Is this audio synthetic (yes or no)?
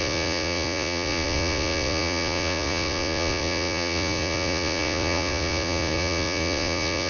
yes